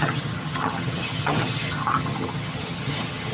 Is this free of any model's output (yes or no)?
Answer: no